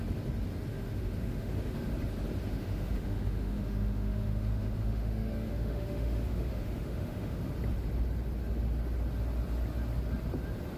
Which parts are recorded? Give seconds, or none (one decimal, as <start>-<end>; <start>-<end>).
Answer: 0.0-0.7; 1.9-2.5; 7.4-10.8

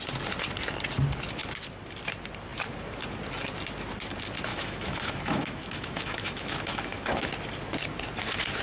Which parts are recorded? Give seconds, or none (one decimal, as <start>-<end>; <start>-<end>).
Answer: 0.0-4.5; 7.3-8.6

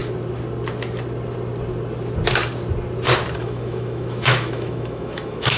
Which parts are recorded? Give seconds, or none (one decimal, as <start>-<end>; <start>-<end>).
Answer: 0.0-3.4

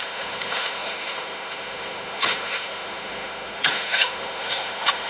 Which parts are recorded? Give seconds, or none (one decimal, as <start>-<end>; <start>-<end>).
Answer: none

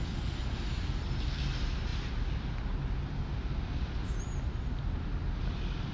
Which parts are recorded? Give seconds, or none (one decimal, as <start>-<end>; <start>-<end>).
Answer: 0.0-5.9

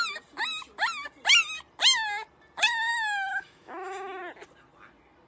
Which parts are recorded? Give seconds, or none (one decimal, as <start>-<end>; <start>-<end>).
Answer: 0.0-2.9; 4.2-5.3